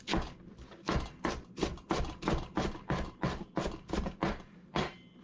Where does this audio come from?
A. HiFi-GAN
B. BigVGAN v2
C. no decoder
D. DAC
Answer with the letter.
C